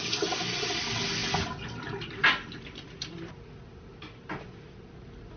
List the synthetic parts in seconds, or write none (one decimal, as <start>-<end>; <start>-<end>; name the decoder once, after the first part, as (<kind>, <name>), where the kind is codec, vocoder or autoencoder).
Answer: none